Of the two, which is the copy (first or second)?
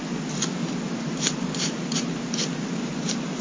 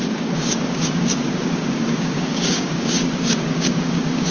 second